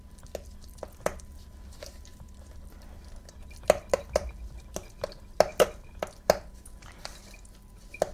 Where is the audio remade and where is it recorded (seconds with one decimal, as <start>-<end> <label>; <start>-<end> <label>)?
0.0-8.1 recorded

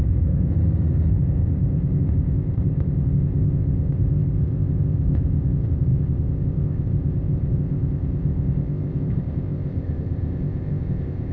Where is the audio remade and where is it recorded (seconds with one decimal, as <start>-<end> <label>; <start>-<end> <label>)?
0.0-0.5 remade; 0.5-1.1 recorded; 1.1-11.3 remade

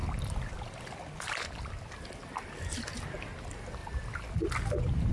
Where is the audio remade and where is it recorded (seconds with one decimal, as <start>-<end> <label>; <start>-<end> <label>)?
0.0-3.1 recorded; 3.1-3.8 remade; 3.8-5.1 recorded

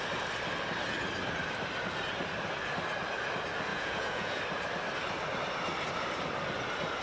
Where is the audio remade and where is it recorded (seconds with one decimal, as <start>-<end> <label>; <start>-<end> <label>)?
0.0-3.7 recorded; 3.7-4.4 remade; 4.4-7.0 recorded

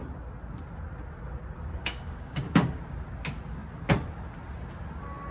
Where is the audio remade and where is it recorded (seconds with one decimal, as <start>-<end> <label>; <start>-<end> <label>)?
0.0-1.8 recorded; 1.8-2.8 remade; 2.8-5.3 recorded

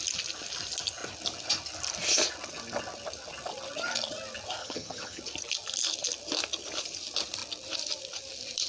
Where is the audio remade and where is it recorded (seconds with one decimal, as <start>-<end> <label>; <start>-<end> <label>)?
0.0-4.6 recorded; 4.6-5.2 remade; 5.2-8.7 recorded

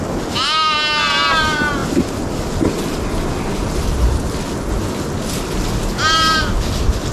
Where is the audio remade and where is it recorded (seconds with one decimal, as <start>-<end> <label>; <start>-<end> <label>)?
0.0-7.1 recorded

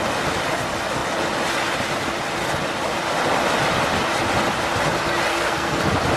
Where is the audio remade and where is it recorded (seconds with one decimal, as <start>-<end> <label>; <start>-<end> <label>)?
0.0-5.3 recorded; 5.3-5.8 remade; 5.8-6.2 recorded